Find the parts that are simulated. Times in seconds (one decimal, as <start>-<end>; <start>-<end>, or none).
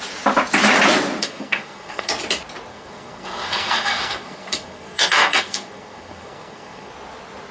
1.2-2.1; 2.7-6.9